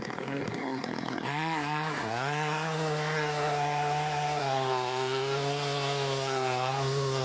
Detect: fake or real fake